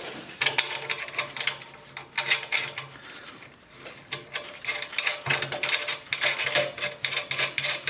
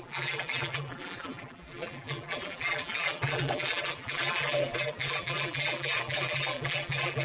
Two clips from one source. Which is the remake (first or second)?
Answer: second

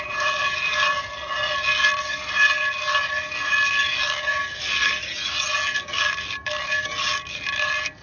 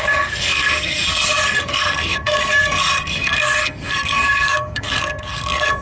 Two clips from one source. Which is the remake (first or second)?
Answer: second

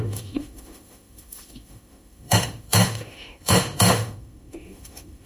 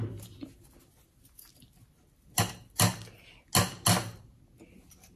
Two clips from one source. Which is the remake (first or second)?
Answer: first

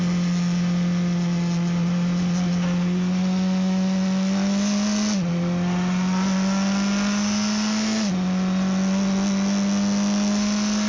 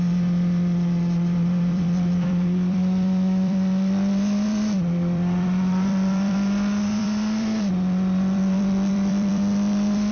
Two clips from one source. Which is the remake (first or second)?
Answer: second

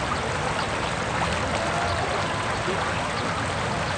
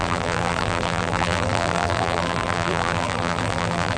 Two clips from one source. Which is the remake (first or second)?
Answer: second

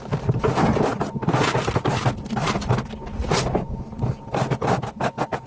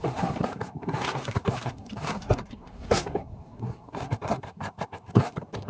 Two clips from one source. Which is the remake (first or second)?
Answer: second